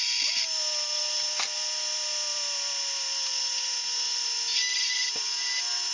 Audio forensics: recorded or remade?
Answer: recorded